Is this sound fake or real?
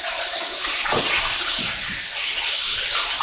real